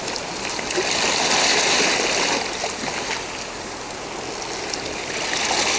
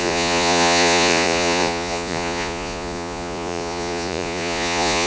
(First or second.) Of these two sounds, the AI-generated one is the second